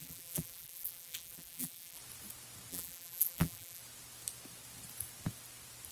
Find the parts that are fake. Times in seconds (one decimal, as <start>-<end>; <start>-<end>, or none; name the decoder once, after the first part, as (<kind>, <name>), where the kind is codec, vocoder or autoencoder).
0.0-2.0 (vocoder, BigVGAN v2); 2.7-3.8